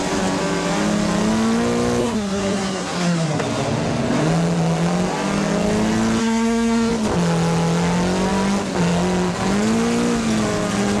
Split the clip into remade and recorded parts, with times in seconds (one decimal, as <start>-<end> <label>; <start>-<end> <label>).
0.0-2.0 recorded; 2.0-3.4 remade; 3.4-6.2 recorded; 6.2-6.9 remade; 6.9-11.0 recorded